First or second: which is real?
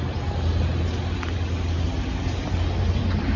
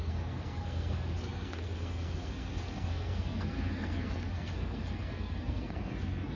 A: first